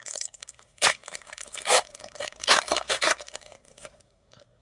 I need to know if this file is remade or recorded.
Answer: remade